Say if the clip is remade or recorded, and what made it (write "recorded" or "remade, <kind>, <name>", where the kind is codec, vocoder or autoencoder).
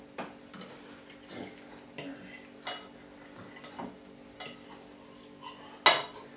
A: recorded